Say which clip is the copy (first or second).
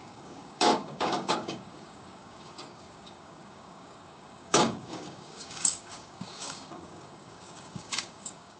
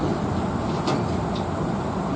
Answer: first